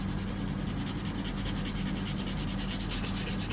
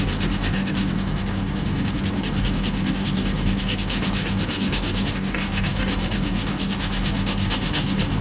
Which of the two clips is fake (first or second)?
second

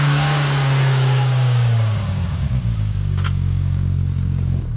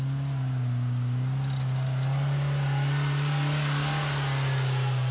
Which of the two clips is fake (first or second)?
first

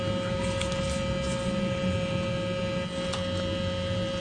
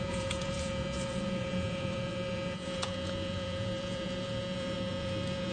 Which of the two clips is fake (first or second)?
second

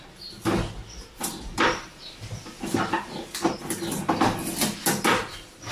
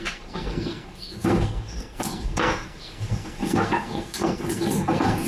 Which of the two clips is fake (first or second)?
second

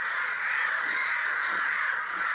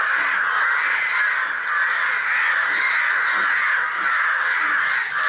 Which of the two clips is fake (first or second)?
first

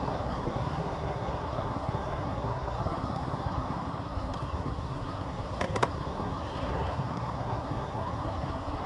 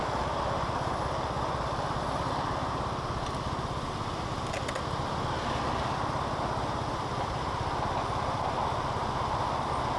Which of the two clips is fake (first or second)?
first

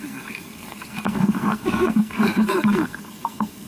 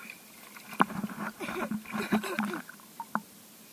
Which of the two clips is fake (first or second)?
first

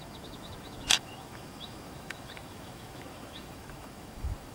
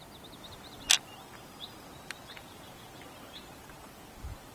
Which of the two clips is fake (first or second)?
first